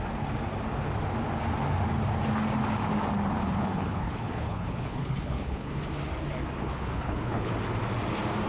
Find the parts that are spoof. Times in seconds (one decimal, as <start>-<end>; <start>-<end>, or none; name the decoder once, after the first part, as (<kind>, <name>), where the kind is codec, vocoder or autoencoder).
3.6-5.8 (codec, HILCodec); 6.6-7.5